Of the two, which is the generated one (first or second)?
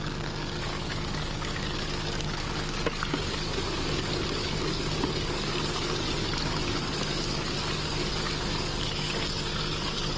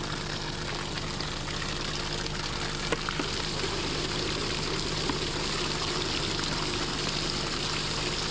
first